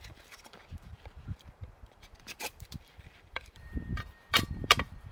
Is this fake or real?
fake